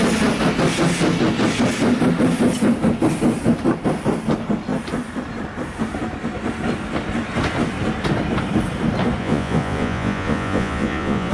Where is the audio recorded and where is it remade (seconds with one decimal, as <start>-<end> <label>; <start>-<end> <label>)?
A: 0.0-9.2 recorded; 9.2-11.3 remade